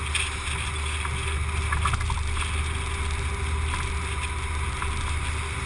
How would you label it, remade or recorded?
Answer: recorded